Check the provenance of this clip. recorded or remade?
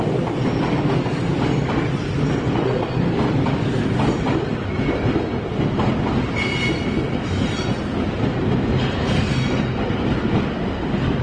recorded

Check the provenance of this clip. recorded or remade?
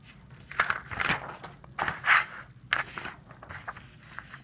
recorded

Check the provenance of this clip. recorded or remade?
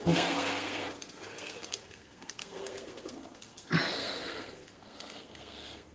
remade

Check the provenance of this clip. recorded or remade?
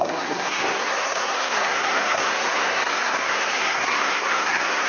remade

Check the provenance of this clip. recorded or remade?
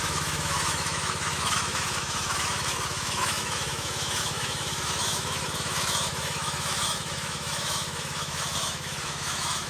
remade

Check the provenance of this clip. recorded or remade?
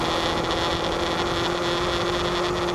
recorded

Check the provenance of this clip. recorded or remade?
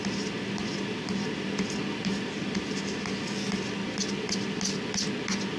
recorded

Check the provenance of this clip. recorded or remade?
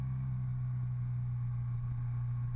recorded